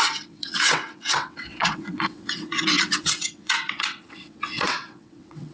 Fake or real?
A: fake